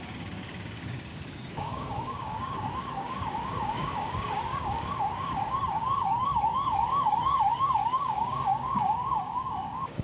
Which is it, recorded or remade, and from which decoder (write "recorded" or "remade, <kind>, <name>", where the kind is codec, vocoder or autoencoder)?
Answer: remade, codec, DAC